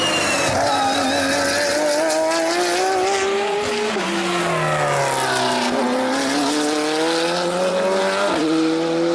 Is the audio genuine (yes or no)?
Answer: yes